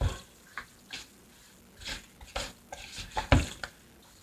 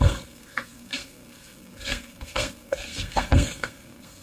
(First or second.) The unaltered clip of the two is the first